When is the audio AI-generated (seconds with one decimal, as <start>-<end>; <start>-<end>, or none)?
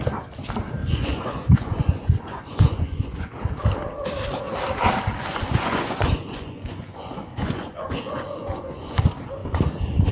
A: 0.8-3.3; 5.3-9.0